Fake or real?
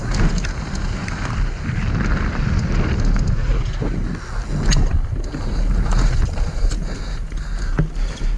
real